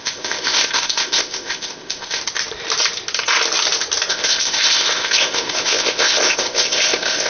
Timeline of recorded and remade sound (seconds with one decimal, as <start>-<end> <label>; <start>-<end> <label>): 0.0-2.2 remade; 2.2-4.1 recorded; 4.1-7.3 remade